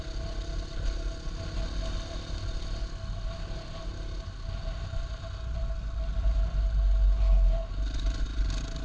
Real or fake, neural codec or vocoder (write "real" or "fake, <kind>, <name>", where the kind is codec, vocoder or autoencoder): real